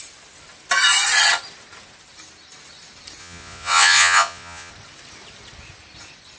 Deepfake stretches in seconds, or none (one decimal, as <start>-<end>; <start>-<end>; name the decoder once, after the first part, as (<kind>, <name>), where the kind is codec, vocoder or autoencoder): 3.2-4.7 (vocoder, Vocos)